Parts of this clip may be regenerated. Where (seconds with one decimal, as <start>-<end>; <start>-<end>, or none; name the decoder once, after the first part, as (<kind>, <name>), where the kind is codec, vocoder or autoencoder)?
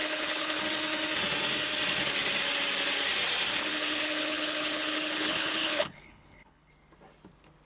0.0-0.6 (codec, HILCodec); 3.5-6.7